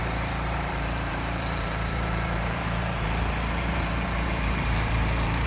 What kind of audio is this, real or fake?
fake